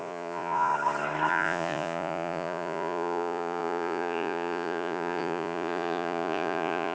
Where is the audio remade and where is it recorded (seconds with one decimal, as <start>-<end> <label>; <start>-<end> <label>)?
0.0-0.7 remade; 0.7-1.3 recorded; 1.3-6.9 remade

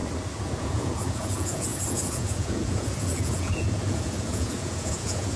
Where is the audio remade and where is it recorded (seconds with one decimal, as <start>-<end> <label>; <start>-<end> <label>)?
0.0-0.6 recorded; 0.6-5.4 remade

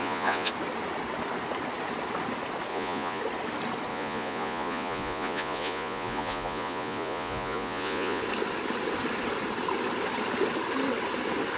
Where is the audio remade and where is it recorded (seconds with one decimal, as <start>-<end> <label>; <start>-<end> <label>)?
0.0-0.5 remade; 0.5-2.7 recorded; 2.7-3.2 remade; 3.2-3.9 recorded; 3.9-8.2 remade; 8.2-11.6 recorded

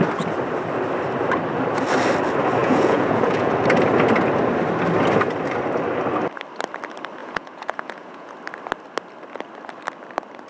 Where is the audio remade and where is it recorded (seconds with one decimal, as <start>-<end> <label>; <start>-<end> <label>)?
0.0-2.6 recorded; 2.6-3.5 remade; 3.5-7.2 recorded; 7.2-8.3 remade; 8.3-10.5 recorded